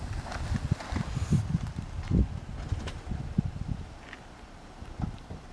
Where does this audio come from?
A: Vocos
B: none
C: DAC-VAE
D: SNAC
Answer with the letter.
B